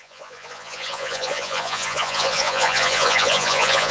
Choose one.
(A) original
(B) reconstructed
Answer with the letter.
B